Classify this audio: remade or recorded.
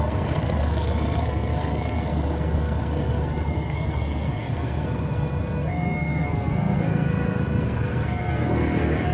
remade